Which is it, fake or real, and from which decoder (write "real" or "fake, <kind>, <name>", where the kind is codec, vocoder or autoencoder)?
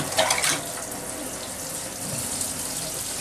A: real